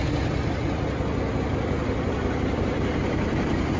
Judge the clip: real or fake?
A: real